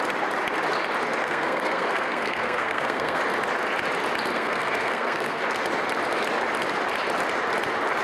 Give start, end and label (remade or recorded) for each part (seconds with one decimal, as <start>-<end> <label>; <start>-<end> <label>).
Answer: 0.0-1.2 recorded; 1.2-3.2 remade; 3.2-4.3 recorded; 4.3-5.4 remade; 5.4-8.0 recorded